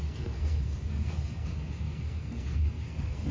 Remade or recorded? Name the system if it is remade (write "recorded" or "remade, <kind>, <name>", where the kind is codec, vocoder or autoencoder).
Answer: remade, codec, SNAC